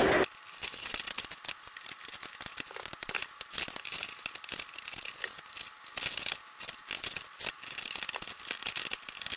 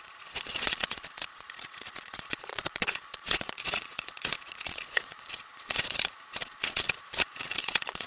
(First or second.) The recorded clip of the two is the first